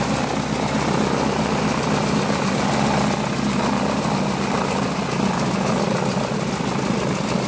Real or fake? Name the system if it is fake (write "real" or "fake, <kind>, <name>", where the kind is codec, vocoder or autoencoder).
real